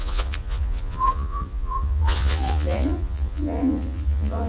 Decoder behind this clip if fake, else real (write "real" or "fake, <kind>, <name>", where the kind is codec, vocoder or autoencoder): fake, vocoder, Vocos